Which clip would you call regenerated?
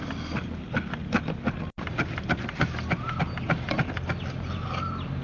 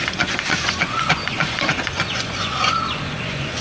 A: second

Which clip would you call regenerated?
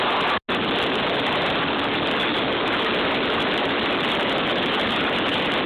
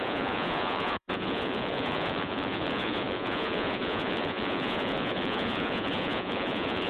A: second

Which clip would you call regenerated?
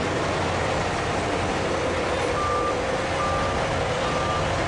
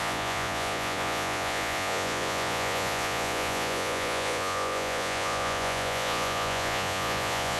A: second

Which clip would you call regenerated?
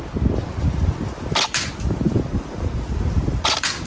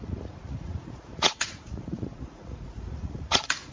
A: second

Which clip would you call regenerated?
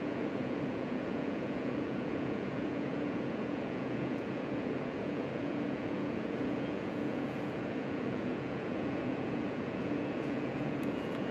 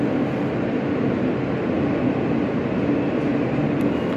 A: first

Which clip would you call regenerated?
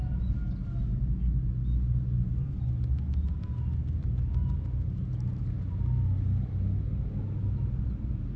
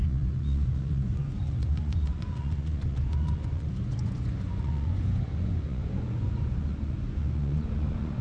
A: second